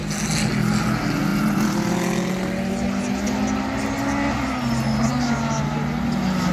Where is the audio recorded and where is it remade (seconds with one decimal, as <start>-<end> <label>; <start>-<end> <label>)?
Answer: 0.0-6.5 recorded